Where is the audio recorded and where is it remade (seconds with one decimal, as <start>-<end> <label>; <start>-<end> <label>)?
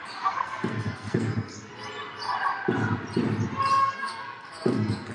0.0-1.7 remade; 1.7-3.8 recorded; 3.8-5.1 remade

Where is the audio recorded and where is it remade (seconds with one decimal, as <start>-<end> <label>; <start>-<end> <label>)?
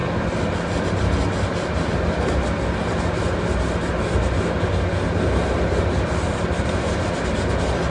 0.0-7.9 recorded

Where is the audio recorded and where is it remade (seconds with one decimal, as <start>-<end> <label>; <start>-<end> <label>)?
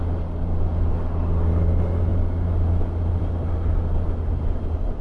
0.0-5.0 recorded